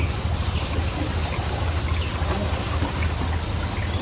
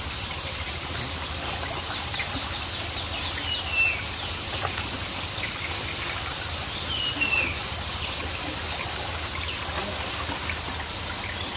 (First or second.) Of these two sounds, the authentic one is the first